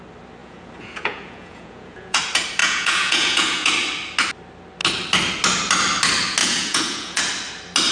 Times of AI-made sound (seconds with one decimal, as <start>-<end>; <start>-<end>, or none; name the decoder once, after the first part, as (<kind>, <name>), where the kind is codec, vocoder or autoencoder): 0.4-2.2 (vocoder, Vocos); 2.6-3.7; 6.4-7.2